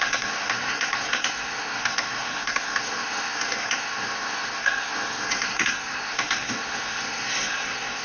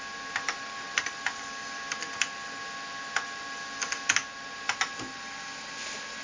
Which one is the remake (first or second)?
first